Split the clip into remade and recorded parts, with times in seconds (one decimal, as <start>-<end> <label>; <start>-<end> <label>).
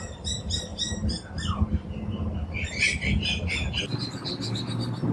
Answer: 0.0-0.7 recorded; 0.7-3.8 remade; 3.8-5.1 recorded